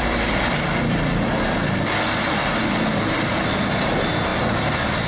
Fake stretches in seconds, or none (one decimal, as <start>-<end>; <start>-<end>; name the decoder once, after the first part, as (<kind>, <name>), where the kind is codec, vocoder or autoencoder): none